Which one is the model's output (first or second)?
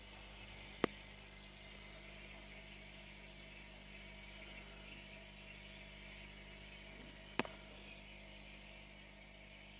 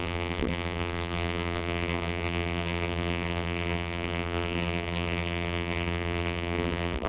second